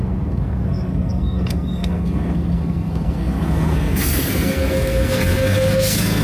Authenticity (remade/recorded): remade